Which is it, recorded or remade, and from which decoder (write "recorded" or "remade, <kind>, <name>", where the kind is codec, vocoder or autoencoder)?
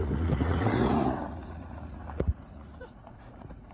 remade, vocoder, Vocos